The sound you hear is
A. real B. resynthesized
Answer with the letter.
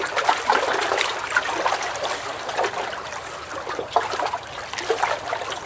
A